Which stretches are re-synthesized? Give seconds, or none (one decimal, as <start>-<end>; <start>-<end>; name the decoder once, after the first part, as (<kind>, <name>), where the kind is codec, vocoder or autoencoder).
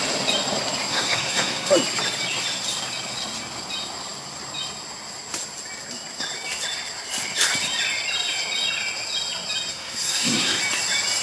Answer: 0.9-1.7 (codec, SNAC); 9.7-10.6